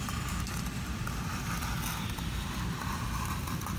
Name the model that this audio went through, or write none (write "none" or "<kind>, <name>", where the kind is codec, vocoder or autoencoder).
vocoder, BigVGAN v2